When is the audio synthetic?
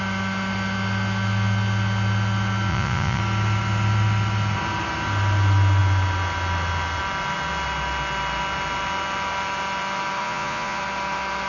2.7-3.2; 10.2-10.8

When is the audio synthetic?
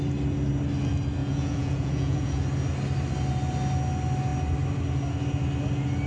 1.2-2.4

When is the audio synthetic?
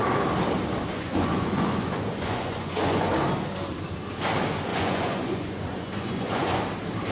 0.9-3.1; 4.7-6.6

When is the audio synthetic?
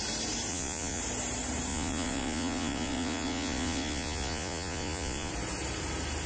0.5-1.0; 1.7-5.3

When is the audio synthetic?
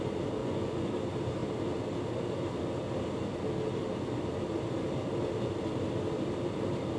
0.4-0.9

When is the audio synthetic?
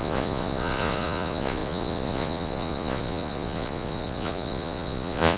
0.0-5.4